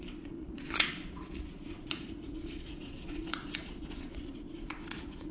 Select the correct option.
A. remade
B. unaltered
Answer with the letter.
A